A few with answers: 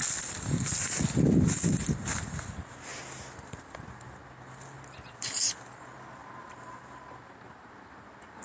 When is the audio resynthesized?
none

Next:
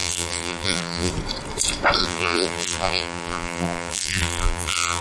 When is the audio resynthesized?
0.0-1.1; 2.0-5.0

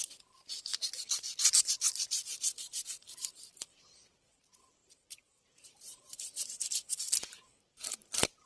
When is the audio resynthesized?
4.8-6.6

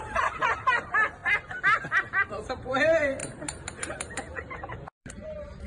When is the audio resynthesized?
0.0-1.2; 2.3-5.7

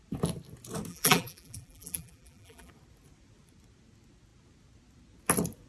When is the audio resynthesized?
0.9-2.7

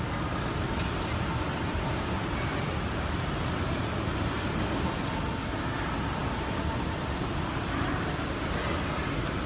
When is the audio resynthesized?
6.2-7.3; 7.9-8.7

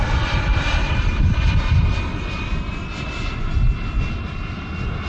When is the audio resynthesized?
0.5-1.2